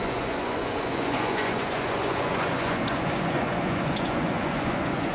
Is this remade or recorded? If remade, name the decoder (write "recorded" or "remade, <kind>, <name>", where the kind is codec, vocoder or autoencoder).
remade, vocoder, Vocos